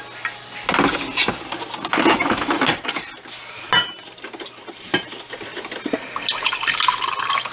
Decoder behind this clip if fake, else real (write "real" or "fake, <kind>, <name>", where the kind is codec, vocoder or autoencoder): real